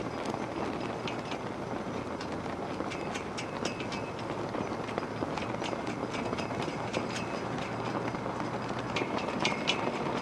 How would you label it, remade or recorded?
recorded